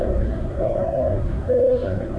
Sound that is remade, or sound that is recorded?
remade